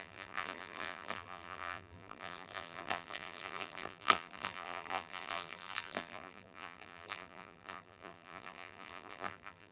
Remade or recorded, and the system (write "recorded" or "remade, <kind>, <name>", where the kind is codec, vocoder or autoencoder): remade, vocoder, BigVGAN v2